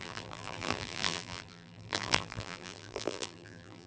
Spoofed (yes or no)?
yes